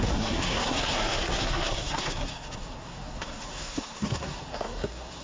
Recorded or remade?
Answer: remade